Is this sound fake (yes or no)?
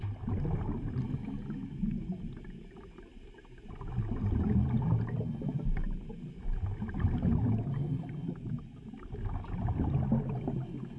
no